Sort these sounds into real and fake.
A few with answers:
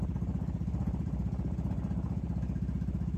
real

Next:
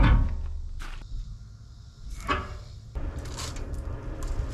real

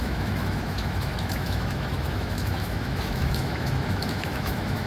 fake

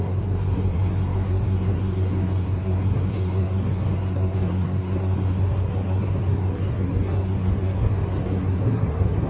fake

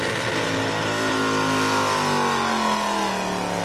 real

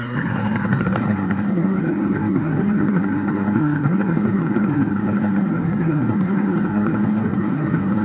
fake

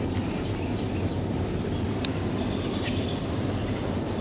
real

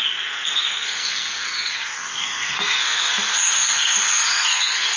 fake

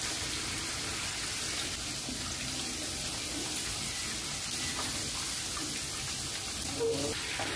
real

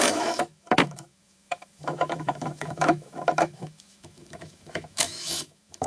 fake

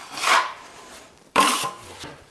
fake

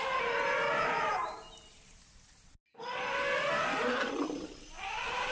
fake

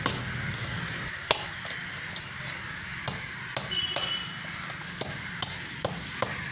real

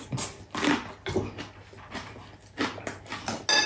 real